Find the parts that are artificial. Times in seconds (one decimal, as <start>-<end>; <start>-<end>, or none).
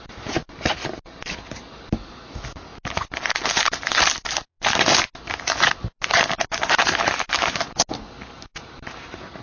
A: none